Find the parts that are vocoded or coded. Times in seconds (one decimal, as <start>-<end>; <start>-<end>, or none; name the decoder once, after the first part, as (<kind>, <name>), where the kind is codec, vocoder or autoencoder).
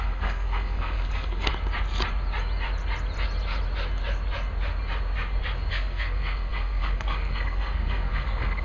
0.0-1.5 (codec, SNAC); 5.7-8.6